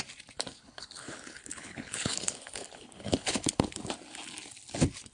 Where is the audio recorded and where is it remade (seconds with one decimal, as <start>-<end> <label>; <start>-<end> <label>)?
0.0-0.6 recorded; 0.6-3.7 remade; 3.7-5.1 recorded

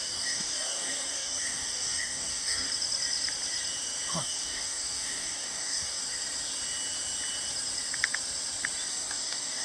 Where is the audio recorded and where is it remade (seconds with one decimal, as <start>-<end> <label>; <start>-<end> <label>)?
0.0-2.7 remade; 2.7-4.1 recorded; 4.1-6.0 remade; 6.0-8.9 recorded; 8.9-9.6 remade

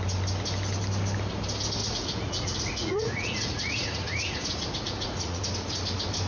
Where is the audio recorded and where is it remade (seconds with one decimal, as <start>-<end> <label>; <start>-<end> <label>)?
0.0-1.8 recorded; 1.8-5.4 remade; 5.4-6.3 recorded